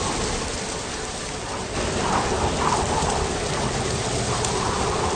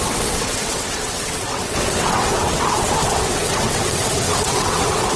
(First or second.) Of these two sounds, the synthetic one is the second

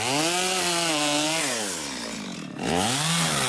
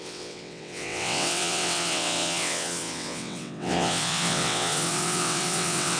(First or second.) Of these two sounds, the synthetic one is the second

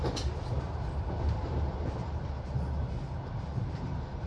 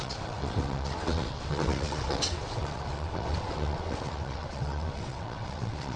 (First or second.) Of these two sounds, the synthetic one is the second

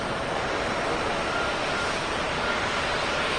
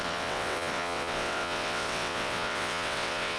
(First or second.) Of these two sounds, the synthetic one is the second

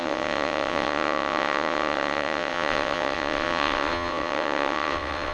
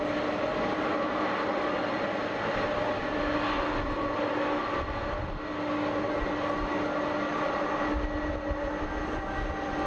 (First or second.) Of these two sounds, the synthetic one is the first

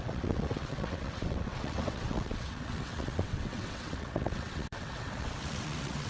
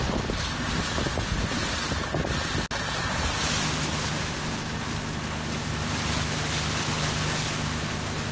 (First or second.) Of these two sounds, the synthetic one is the first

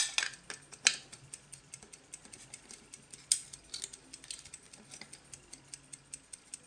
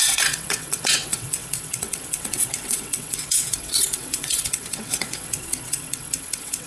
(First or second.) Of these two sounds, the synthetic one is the second